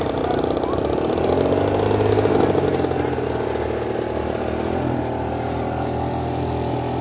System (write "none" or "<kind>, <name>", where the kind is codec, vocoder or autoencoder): none